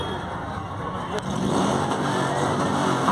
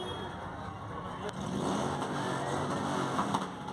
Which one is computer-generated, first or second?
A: first